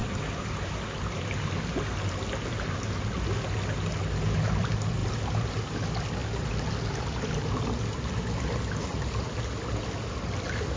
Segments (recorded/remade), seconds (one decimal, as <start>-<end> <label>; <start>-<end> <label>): 0.0-0.8 remade; 0.8-10.8 recorded